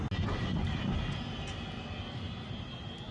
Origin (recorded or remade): recorded